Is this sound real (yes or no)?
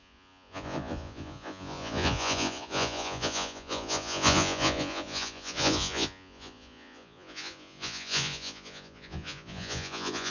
no